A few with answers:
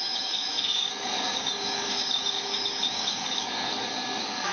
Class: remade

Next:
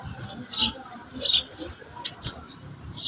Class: recorded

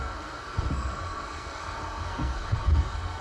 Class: remade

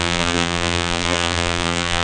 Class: remade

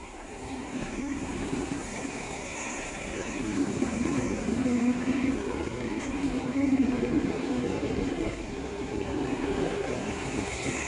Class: remade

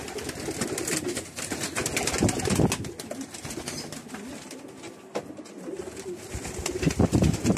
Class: recorded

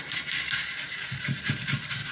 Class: recorded